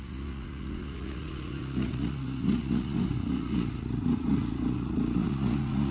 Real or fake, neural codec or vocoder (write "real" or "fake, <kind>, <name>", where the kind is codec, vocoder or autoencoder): fake, vocoder, Vocos